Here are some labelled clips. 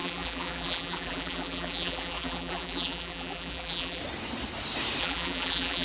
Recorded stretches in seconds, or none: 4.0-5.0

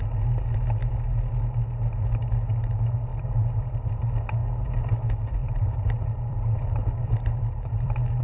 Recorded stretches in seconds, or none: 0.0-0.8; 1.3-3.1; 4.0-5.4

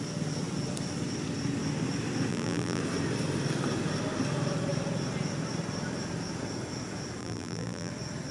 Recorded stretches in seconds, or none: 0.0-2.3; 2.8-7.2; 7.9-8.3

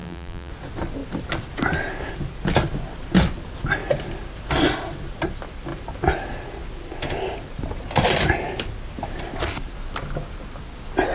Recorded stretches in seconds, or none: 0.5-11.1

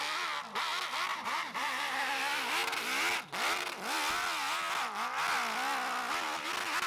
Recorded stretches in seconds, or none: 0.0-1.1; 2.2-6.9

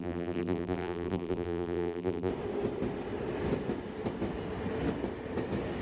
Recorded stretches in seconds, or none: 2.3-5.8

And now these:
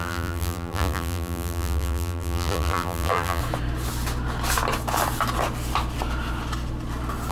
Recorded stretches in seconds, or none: 3.4-7.3

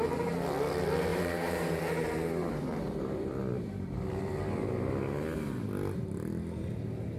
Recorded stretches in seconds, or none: 0.0-1.1; 1.8-2.7; 3.4-7.2